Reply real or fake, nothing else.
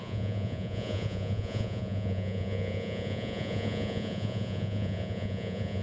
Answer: fake